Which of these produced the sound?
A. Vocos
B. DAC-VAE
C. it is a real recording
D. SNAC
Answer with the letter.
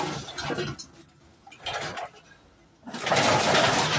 C